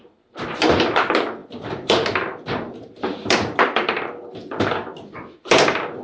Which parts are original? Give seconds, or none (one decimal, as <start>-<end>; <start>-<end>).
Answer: 0.0-1.4; 4.3-6.0